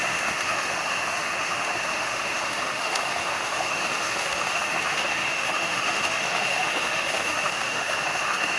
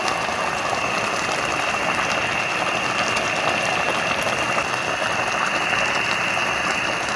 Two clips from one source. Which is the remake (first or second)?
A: first